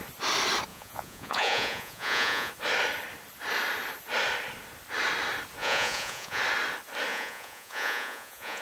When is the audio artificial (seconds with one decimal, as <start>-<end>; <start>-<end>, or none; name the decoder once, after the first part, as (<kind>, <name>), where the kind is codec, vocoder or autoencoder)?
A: 0.7-2.5 (vocoder, Vocos); 5.6-6.4; 7.1-8.6